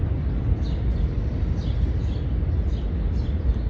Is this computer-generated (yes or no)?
no